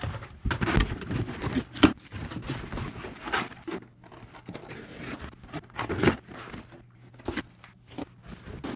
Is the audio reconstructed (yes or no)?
no